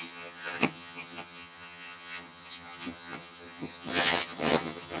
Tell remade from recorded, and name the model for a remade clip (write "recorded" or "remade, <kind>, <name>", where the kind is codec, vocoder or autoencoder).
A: remade, vocoder, HiFi-GAN